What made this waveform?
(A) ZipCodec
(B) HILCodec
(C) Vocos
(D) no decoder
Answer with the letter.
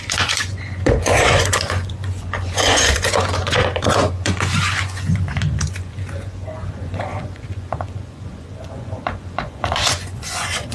C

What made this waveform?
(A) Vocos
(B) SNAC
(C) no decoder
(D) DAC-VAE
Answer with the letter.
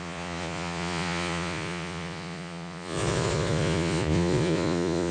A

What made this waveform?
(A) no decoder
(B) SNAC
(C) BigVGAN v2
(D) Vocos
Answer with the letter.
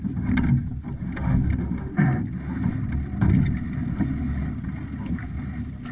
A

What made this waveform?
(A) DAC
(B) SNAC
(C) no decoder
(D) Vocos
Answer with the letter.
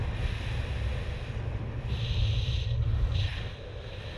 C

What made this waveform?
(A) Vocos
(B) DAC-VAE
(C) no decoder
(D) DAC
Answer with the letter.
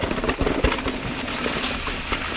C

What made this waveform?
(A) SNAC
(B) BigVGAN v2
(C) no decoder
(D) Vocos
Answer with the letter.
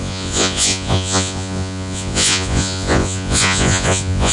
D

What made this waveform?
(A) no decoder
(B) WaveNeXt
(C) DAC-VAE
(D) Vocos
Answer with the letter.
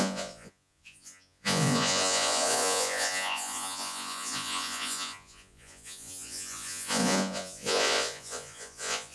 D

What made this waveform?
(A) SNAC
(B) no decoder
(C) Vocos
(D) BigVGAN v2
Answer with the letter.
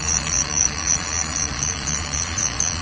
C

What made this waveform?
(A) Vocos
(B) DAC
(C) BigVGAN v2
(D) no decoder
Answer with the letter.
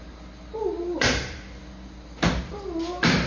D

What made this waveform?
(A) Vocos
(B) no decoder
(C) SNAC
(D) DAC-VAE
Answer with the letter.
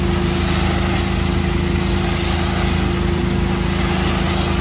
B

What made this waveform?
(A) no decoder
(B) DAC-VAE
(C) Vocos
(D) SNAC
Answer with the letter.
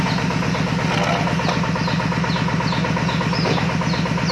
A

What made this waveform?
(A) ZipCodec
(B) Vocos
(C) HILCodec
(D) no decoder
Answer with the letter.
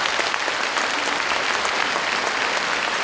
D